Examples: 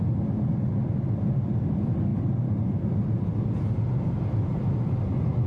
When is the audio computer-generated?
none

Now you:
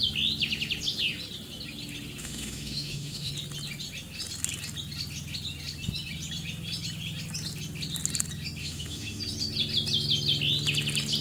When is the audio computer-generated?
2.2-3.3 (autoencoder, DAC-VAE); 8.6-9.2

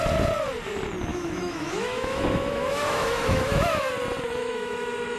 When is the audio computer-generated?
1.1-3.9 (autoencoder, DAC-VAE); 4.4-5.2

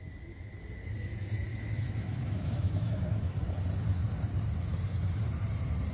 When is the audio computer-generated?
1.5-3.4 (autoencoder, DAC-VAE)

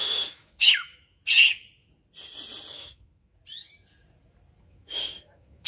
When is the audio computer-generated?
0.0-1.2 (autoencoder, DAC-VAE); 2.7-3.4; 4.6-5.7

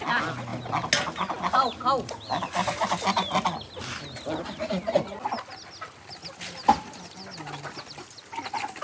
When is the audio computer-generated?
none

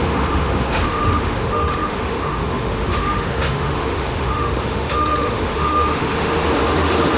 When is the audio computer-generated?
0.0-7.2 (autoencoder, DAC-VAE)